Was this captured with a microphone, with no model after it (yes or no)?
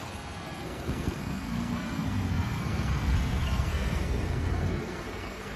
no